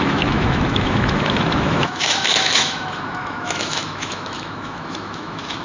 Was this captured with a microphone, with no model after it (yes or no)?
no